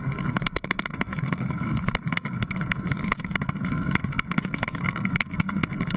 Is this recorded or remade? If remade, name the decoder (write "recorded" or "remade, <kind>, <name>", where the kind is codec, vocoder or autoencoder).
remade, codec, SNAC